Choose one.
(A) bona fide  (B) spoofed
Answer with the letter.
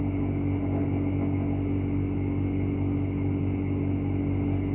A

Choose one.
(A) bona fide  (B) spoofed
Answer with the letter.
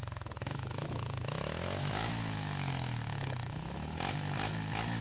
B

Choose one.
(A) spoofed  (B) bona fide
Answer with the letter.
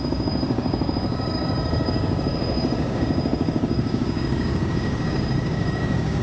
A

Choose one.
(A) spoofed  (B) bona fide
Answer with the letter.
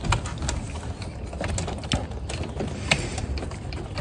B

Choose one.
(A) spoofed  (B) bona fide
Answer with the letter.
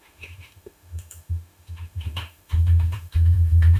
A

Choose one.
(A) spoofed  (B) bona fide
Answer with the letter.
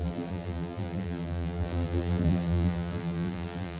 A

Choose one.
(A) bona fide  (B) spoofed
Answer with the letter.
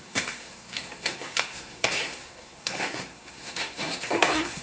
B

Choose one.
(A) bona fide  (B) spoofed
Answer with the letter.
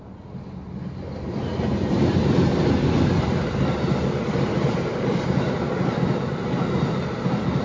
A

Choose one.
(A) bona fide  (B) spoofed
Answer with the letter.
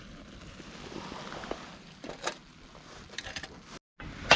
A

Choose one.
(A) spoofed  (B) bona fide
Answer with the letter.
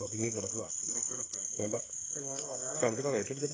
A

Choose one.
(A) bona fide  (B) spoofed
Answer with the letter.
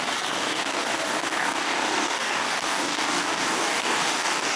B